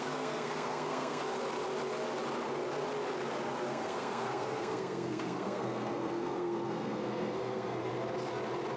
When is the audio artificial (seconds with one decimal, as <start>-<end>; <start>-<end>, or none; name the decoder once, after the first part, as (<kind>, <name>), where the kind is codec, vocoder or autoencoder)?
0.0-1.2 (codec, SNAC); 3.7-7.9